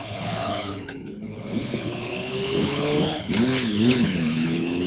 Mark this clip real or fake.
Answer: fake